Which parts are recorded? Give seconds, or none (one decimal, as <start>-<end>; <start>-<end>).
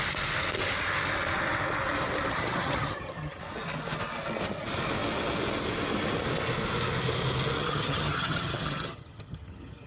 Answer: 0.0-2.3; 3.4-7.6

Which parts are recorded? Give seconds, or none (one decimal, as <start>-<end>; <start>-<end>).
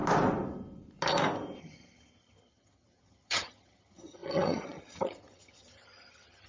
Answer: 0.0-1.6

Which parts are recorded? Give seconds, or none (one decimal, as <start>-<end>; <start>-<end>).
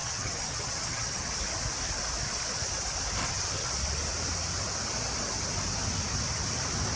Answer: 1.3-3.2; 3.7-7.0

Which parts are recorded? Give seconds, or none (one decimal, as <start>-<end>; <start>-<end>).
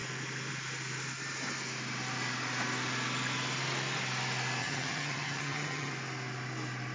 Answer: 0.0-4.6; 5.9-6.9